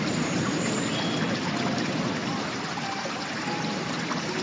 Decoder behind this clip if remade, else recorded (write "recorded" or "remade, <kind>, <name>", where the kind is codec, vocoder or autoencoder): recorded